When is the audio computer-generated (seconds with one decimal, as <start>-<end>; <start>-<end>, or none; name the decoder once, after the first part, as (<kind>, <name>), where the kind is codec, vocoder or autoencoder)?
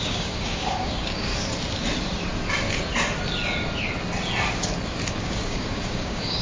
0.0-1.3 (codec, DAC); 5.1-6.4